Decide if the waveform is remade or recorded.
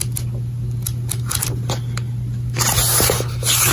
recorded